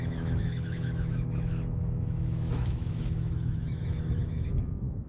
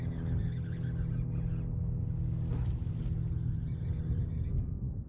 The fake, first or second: first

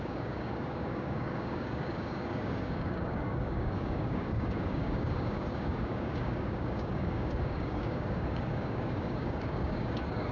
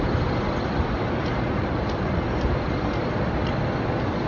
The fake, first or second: first